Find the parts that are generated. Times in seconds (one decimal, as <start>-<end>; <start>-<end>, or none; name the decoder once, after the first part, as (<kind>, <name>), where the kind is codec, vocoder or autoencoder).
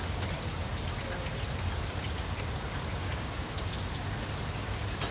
3.0-3.5 (codec, DAC)